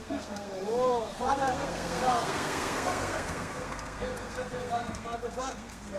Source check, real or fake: fake